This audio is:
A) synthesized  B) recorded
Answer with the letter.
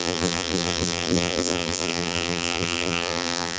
A